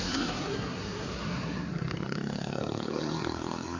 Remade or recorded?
remade